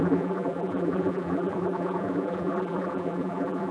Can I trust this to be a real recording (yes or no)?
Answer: no